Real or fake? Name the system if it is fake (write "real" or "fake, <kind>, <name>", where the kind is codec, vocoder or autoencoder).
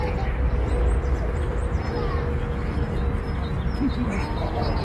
real